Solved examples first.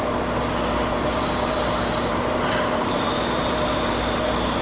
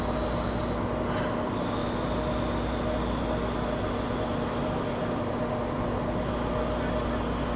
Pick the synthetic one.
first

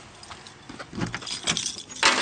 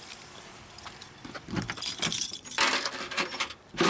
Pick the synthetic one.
second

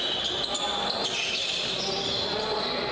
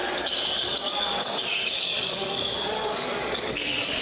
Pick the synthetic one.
second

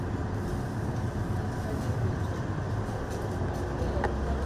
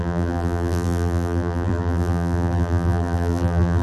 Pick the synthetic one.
second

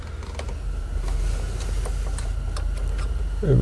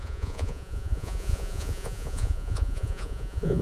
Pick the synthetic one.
second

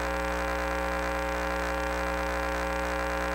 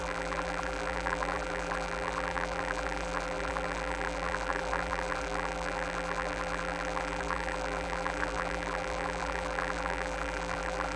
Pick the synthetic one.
second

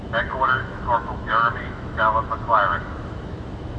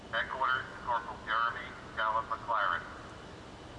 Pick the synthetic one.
first